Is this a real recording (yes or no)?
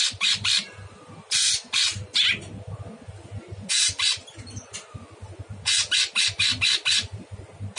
yes